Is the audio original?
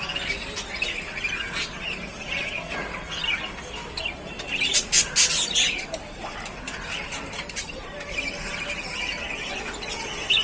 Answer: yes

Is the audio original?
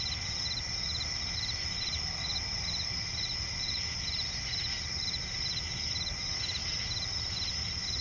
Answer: yes